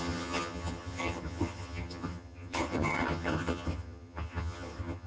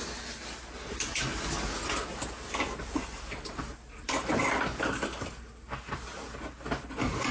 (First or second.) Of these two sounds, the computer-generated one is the first